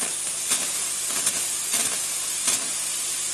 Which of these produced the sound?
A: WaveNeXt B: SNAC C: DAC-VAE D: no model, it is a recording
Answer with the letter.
D